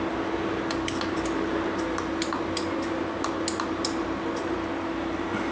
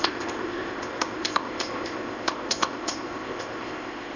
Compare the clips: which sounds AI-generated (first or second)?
second